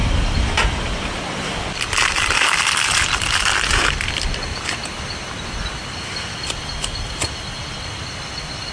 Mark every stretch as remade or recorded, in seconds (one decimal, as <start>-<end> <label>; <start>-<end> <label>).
0.0-4.1 remade; 4.1-8.7 recorded